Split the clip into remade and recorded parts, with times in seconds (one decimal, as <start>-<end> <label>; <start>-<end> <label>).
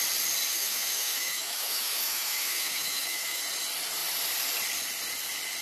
0.0-0.5 recorded; 0.5-3.4 remade; 3.4-5.6 recorded